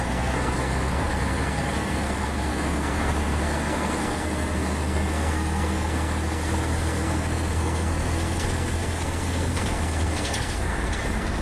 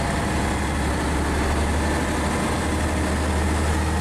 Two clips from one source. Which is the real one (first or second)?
second